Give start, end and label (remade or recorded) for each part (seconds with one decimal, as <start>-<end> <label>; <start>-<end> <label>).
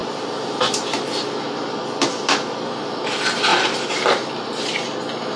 0.0-1.1 remade; 1.1-3.5 recorded; 3.5-5.0 remade; 5.0-5.4 recorded